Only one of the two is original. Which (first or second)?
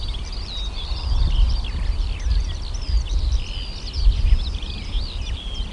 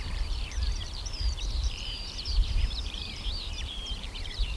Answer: first